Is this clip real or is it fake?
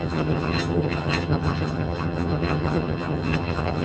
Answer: fake